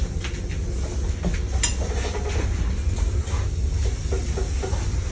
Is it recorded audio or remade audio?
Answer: recorded